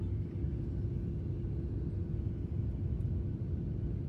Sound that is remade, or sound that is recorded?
recorded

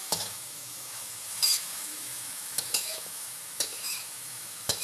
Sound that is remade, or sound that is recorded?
remade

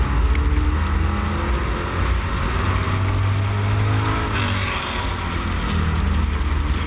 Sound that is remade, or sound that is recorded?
recorded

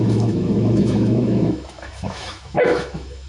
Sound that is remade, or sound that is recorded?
remade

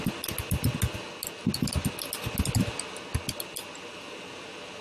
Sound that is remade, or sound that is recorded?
recorded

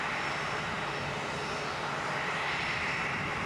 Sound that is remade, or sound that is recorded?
recorded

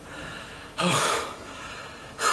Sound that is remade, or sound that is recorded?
remade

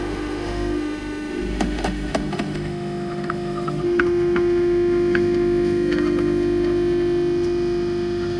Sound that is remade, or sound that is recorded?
remade